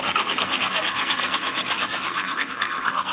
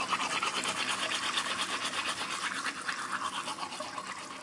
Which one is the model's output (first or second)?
first